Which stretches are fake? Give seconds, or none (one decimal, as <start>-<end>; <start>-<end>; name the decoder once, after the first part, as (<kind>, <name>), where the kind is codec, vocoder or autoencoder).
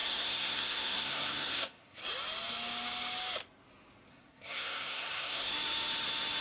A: 0.0-2.0 (codec, SNAC); 4.1-5.5